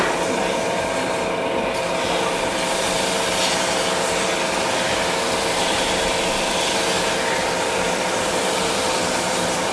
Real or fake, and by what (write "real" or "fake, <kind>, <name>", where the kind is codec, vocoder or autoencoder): real